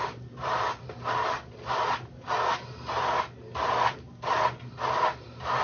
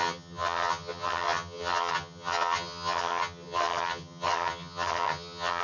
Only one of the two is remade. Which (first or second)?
second